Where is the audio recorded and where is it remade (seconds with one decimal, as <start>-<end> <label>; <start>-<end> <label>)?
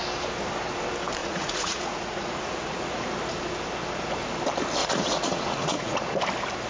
0.0-1.2 recorded; 1.2-3.1 remade; 3.1-4.8 recorded; 4.8-6.2 remade; 6.2-6.7 recorded